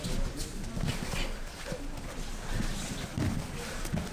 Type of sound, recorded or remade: recorded